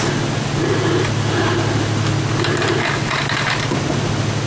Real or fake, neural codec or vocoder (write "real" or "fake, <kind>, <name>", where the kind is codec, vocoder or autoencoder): real